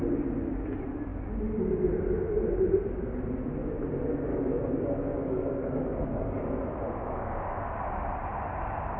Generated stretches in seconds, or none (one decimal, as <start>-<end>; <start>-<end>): 4.3-6.6; 7.0-7.6